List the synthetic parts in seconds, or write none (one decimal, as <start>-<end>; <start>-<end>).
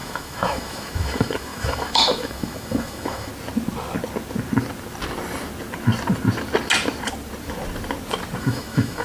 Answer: 0.0-3.3; 8.4-9.0